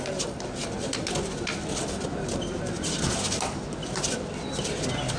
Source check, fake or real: real